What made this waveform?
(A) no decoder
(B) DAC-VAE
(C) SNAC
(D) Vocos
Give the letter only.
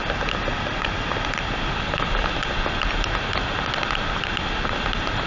A